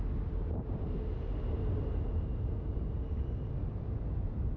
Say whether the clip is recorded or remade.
recorded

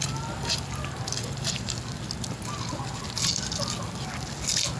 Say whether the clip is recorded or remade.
recorded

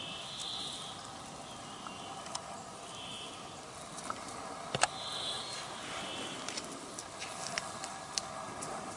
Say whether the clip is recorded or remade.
recorded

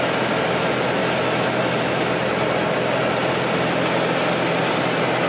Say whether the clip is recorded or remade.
recorded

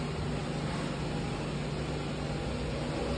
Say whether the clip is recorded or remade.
recorded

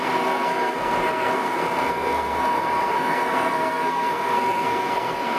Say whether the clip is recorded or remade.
remade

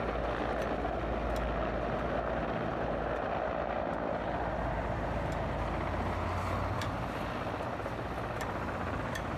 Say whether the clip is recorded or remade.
recorded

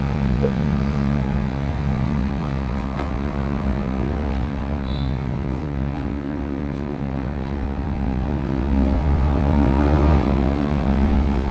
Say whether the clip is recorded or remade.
remade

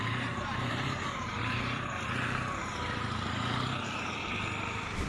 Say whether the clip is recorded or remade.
remade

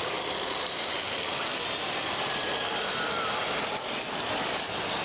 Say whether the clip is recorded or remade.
recorded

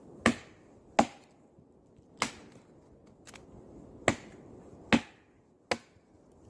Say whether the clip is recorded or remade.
recorded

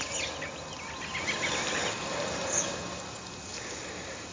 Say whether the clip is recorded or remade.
recorded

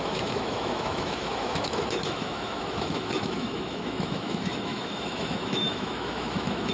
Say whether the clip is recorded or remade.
remade